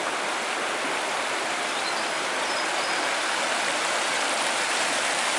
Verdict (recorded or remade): recorded